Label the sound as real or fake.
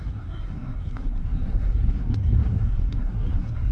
fake